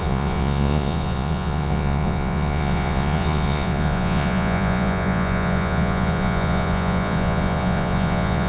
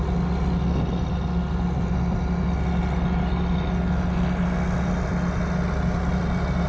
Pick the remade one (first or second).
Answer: first